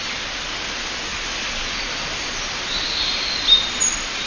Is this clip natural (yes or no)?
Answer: yes